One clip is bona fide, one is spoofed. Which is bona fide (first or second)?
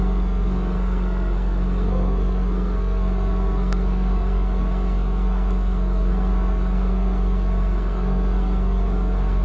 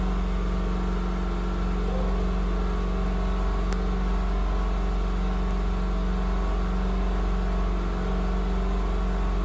second